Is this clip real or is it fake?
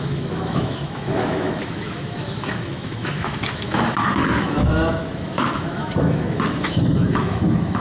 fake